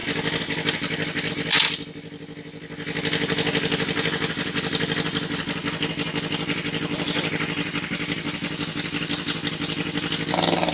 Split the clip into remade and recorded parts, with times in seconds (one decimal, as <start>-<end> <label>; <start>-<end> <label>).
0.0-10.7 recorded